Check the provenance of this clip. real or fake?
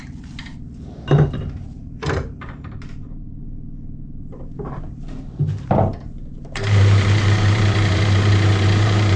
fake